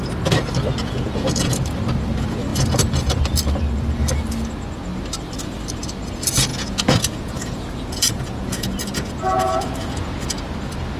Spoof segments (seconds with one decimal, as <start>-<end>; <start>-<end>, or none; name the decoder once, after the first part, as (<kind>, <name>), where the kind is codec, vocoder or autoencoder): 0.8-1.6 (vocoder, Vocos); 6.5-10.4